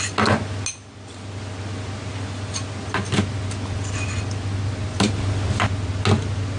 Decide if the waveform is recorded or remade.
recorded